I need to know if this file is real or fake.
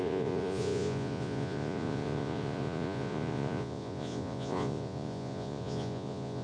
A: fake